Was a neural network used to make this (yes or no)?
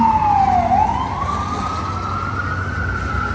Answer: no